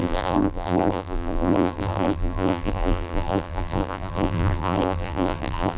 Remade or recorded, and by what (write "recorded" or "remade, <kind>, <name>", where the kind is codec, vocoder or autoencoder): remade, vocoder, BigVGAN v2